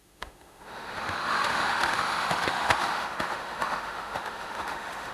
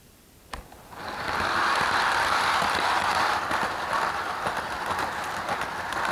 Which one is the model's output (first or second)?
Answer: first